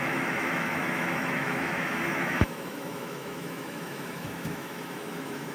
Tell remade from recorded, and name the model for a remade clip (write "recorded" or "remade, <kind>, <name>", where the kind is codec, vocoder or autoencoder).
remade, autoencoder, DAC-VAE